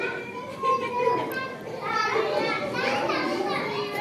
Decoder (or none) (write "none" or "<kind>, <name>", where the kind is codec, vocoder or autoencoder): vocoder, BigVGAN v2